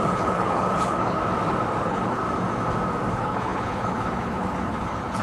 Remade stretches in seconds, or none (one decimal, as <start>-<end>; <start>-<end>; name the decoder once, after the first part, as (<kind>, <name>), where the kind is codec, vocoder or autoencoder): 0.0-1.2 (codec, HILCodec); 1.8-2.2; 3.1-5.2